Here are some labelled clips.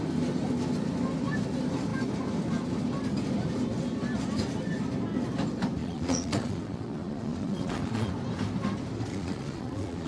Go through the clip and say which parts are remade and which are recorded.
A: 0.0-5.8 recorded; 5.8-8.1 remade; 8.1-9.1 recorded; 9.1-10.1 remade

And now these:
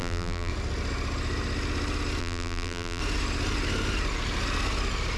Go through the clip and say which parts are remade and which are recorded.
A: 0.0-0.5 remade; 0.5-2.2 recorded; 2.2-3.0 remade; 3.0-5.2 recorded